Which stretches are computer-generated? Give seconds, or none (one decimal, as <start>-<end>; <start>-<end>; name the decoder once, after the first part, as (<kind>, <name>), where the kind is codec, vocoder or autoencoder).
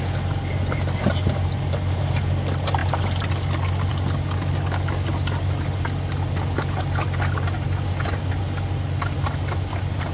none